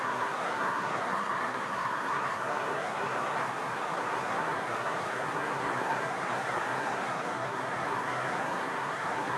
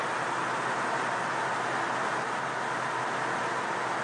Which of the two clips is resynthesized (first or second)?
first